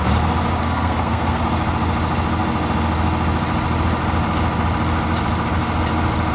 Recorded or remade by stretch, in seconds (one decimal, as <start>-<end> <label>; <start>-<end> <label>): 0.0-0.6 recorded; 0.6-1.4 remade; 1.4-6.3 recorded